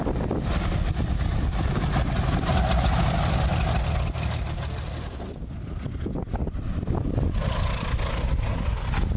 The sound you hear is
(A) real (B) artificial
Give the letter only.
A